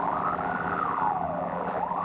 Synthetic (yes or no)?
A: yes